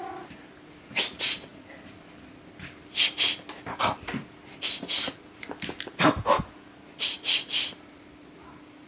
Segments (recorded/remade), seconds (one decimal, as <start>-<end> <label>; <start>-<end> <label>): 0.0-8.9 recorded